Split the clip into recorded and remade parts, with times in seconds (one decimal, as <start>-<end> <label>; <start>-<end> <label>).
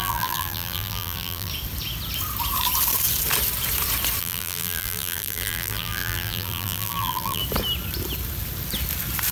0.0-1.5 remade; 1.5-4.2 recorded; 4.2-7.4 remade; 7.4-9.3 recorded